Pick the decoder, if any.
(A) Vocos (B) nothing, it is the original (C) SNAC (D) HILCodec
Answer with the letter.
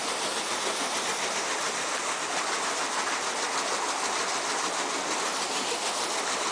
B